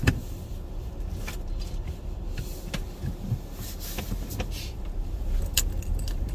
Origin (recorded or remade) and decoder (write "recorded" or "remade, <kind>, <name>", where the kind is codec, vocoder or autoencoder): recorded